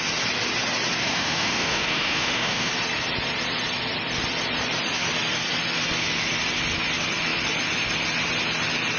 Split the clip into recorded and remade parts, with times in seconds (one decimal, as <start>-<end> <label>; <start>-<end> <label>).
0.0-1.0 recorded; 1.0-2.7 remade; 2.7-9.0 recorded

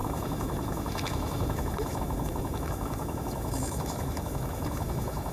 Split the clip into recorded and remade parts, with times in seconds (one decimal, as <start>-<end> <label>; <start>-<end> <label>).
0.0-5.3 remade